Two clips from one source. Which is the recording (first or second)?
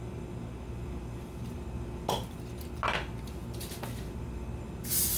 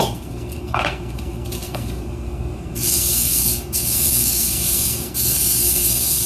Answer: first